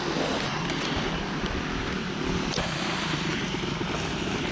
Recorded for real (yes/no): yes